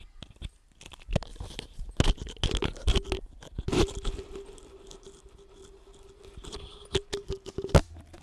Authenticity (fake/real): real